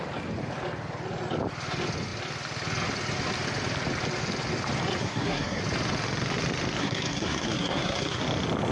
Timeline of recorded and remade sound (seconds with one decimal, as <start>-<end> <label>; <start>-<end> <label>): 0.0-5.0 recorded; 5.0-5.6 remade; 5.6-6.8 recorded; 6.8-8.2 remade; 8.2-8.7 recorded